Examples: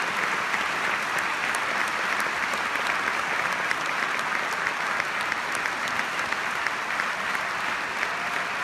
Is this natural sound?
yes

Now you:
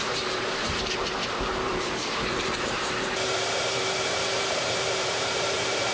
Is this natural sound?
no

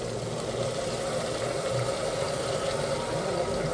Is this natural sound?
yes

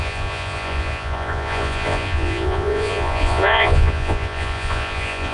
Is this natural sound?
no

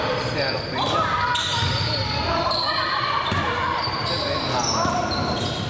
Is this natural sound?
no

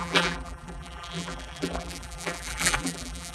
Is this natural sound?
no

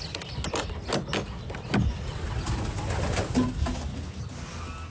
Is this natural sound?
yes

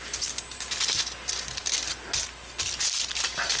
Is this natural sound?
yes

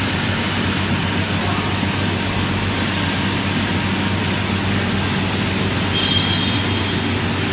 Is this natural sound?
yes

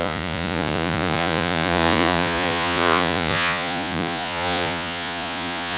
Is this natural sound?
no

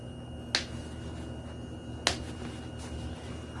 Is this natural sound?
yes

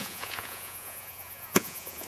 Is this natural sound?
no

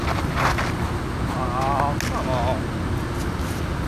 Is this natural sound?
yes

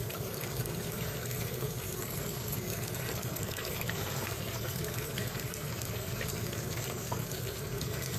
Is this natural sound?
no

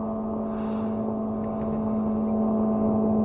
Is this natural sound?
yes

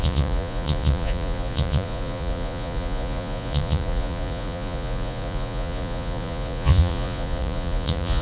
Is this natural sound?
no